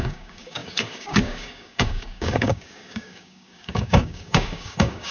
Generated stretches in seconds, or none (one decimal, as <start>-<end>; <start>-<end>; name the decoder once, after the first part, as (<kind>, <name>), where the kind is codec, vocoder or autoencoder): 0.0-5.1 (codec, DAC)